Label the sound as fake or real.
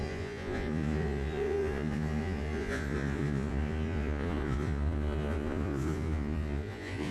fake